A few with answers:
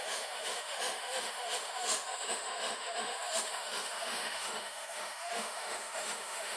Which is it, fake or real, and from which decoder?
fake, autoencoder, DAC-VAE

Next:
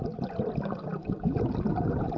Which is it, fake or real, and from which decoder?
real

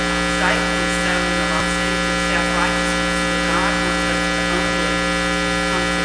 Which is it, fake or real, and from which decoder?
real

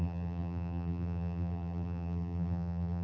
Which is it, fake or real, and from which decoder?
fake, vocoder, BigVGAN v2